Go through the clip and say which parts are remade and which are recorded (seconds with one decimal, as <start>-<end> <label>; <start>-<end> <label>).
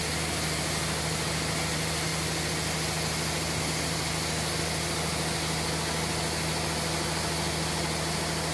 0.0-8.5 recorded